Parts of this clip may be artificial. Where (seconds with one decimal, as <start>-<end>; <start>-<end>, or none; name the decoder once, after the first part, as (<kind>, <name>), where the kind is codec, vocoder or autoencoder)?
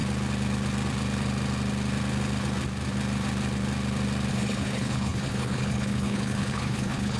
4.3-7.2 (codec, HILCodec)